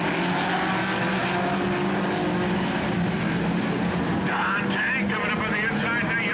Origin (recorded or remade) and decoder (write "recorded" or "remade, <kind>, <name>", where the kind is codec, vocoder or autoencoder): recorded